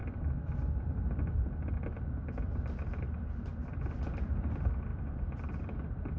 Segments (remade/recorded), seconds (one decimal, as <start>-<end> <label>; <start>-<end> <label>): 0.0-2.0 recorded; 2.0-6.2 remade